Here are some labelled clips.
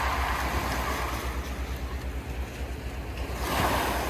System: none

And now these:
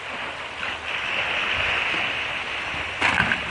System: none